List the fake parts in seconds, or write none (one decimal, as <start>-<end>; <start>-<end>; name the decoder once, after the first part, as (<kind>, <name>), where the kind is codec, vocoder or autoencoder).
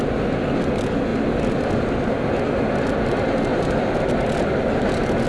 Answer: 1.1-2.1 (vocoder, BigVGAN v2); 3.5-4.1